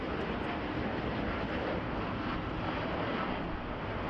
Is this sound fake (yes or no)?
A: no